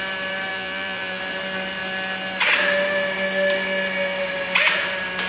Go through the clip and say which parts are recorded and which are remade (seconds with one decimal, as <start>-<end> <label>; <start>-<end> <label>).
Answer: 0.0-0.5 recorded; 0.5-1.2 remade; 1.2-5.3 recorded

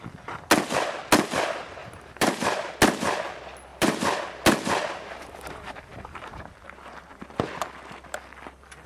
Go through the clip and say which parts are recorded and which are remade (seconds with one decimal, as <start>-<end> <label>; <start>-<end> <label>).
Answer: 0.0-1.8 recorded; 1.8-2.7 remade; 2.7-3.7 recorded; 3.7-4.2 remade; 4.2-4.8 recorded; 4.8-7.2 remade; 7.2-8.9 recorded

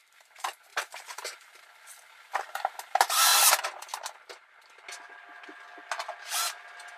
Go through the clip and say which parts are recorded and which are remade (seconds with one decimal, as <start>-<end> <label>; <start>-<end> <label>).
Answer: 0.0-0.7 recorded; 0.7-1.5 remade; 1.5-7.0 recorded

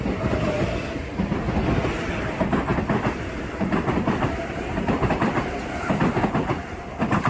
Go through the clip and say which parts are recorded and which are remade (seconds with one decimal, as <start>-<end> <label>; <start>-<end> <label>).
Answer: 0.0-2.7 recorded; 2.7-5.0 remade; 5.0-7.3 recorded

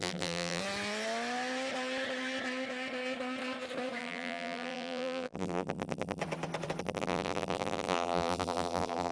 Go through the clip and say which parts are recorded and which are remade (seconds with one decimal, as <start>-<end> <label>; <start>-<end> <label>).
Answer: 0.0-0.6 remade; 0.6-4.0 recorded; 4.0-6.2 remade; 6.2-6.8 recorded; 6.8-9.1 remade